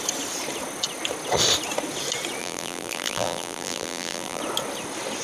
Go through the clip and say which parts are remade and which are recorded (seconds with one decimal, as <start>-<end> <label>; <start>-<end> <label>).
0.0-2.4 recorded; 2.4-4.4 remade; 4.4-5.2 recorded